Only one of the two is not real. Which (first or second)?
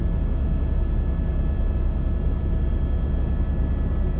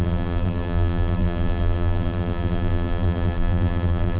second